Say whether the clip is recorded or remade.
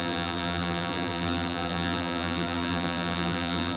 remade